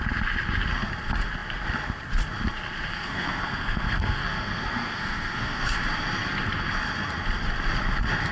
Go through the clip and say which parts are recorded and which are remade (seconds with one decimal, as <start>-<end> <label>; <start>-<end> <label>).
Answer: 0.0-2.9 recorded; 2.9-5.8 remade; 5.8-8.3 recorded